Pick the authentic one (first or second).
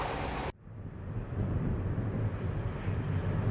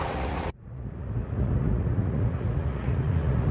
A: first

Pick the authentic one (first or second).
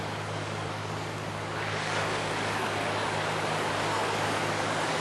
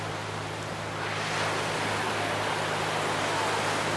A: second